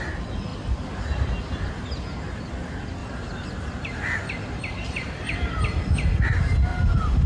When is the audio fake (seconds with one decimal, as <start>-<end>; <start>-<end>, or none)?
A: 3.0-5.8; 6.7-7.3